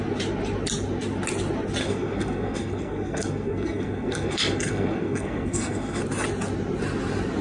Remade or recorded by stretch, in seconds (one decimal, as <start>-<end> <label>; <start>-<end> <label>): 0.0-1.8 recorded; 1.8-6.0 remade; 6.0-7.4 recorded